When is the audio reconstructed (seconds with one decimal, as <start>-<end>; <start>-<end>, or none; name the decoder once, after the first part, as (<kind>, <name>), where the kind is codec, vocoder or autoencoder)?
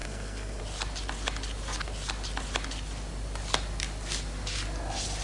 0.0-0.6 (codec, SNAC)